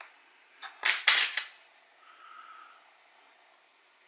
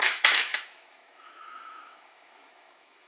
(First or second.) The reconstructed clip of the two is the second